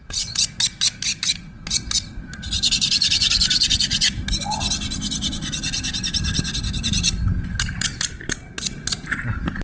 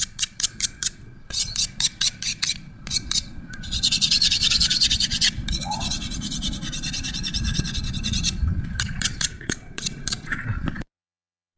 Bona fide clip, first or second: first